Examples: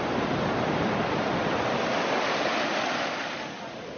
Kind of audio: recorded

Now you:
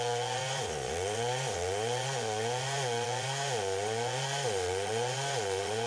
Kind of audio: remade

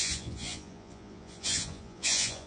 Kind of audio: remade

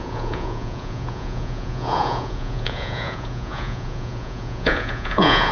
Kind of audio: remade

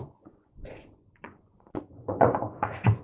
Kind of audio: remade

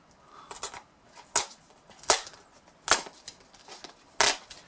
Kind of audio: recorded